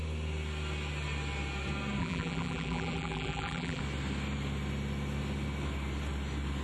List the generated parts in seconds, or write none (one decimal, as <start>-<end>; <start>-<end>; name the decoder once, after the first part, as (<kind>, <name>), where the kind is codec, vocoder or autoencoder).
2.0-3.8 (vocoder, BigVGAN v2)